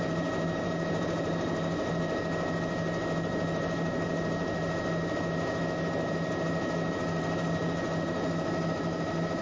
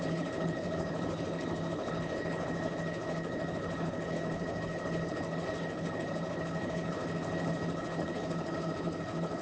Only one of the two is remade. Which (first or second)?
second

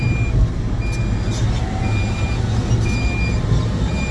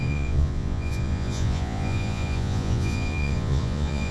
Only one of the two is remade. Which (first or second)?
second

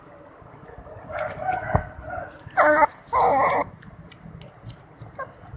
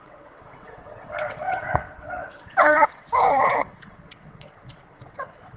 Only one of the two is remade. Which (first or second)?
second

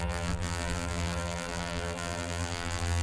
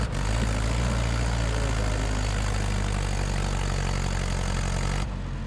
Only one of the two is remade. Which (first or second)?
first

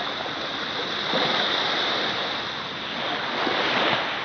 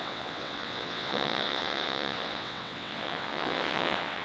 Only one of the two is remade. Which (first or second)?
second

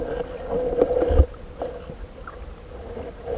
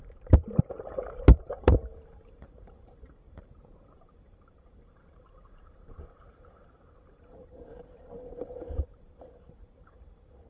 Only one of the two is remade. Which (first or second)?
second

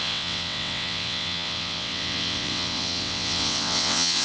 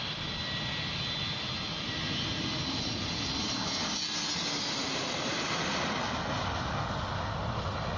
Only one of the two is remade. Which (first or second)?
first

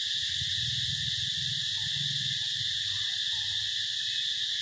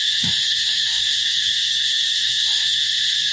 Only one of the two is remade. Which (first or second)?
second